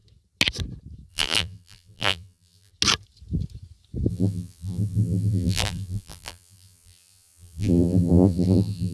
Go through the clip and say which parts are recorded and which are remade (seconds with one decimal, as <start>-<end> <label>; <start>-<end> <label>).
0.0-1.1 recorded; 1.1-2.7 remade; 2.7-4.1 recorded; 4.1-8.9 remade